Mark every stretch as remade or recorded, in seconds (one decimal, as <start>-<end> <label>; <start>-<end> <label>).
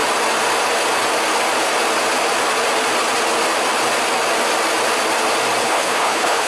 0.0-5.6 recorded; 5.6-6.5 remade